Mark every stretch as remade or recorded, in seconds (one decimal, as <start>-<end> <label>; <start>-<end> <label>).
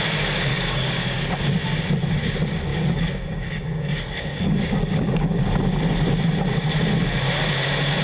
0.0-0.5 recorded; 0.5-1.4 remade; 1.4-2.7 recorded; 2.7-5.4 remade; 5.4-8.0 recorded